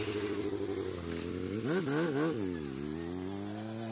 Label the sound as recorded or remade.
recorded